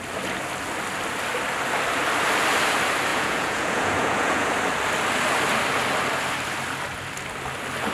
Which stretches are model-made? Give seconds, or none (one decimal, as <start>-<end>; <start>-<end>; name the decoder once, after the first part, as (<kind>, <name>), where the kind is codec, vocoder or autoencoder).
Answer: 3.1-4.5 (vocoder, Vocos)